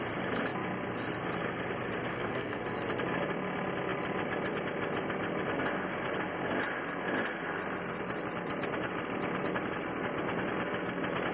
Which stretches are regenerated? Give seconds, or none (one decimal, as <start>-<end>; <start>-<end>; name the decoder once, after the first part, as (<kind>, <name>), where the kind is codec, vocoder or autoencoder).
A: 2.1-2.6 (codec, SNAC)